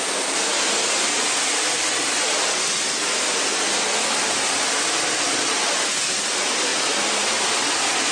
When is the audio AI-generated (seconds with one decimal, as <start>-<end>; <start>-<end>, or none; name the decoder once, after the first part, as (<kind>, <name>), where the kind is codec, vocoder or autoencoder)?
none